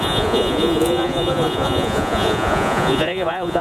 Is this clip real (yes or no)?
no